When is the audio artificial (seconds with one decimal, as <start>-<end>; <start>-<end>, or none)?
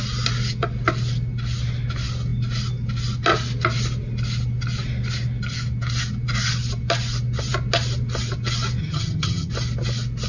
8.8-9.5